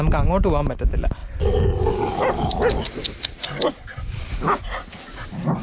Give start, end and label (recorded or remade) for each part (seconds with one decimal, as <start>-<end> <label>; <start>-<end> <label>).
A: 0.0-5.6 recorded